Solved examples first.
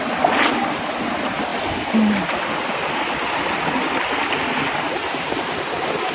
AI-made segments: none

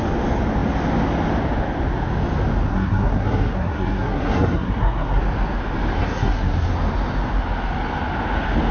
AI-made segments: 2.7-5.2 (codec, SNAC); 6.0-6.7

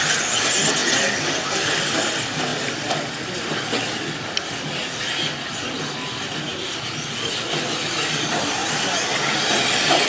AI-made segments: none

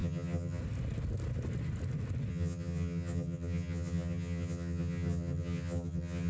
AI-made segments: 0.0-0.6 (vocoder, HiFi-GAN); 2.3-6.3

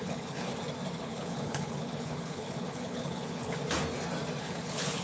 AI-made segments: 0.0-0.5 (codec, HILCodec); 1.0-3.6; 4.4-5.0

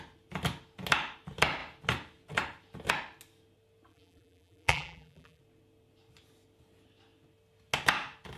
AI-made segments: 3.9-5.4 (vocoder, BigVGAN v2)

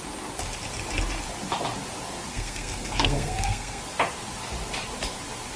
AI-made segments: 2.3-3.8 (codec, SNAC)